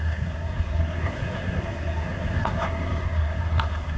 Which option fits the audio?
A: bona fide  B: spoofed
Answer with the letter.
B